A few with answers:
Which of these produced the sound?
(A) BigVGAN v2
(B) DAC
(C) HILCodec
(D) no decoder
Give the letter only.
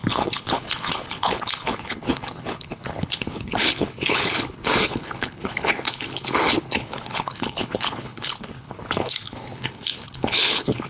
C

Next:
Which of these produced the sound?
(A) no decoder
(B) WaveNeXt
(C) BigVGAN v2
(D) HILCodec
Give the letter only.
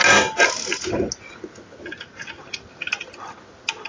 A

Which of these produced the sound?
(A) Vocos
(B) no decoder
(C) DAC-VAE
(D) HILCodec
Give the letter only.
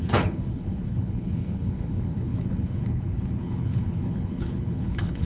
D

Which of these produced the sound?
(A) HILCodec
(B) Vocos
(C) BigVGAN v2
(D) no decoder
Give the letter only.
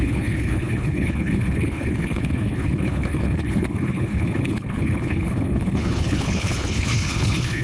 A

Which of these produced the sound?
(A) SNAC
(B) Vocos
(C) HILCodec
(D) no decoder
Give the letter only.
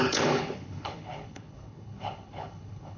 C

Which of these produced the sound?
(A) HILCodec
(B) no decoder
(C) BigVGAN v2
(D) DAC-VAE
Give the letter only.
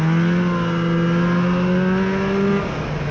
B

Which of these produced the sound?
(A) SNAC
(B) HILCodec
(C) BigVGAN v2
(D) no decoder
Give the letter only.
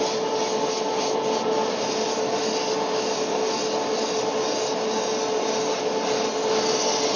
D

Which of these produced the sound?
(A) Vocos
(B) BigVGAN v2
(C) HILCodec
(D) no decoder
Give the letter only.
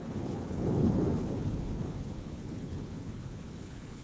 C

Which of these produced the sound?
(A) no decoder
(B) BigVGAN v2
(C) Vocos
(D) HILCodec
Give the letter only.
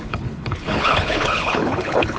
D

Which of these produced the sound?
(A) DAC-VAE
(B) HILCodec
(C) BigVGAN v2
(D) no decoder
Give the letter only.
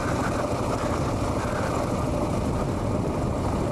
D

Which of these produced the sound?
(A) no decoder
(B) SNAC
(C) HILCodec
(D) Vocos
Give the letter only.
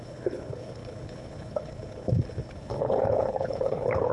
C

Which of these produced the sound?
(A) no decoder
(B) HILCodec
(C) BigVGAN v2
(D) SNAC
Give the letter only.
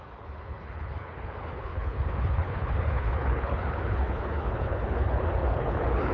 B